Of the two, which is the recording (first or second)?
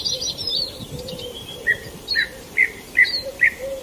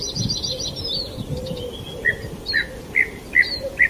second